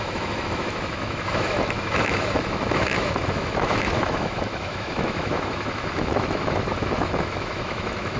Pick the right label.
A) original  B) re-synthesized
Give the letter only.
B